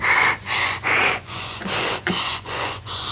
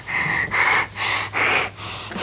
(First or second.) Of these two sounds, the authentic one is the second